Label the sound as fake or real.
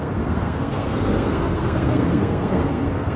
fake